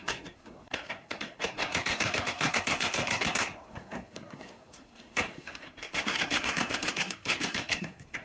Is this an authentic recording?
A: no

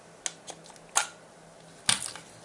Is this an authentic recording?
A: yes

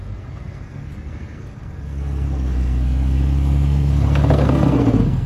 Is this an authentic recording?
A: no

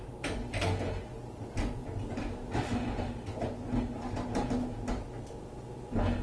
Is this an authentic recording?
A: yes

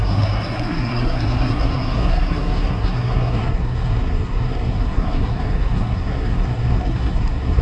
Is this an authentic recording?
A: no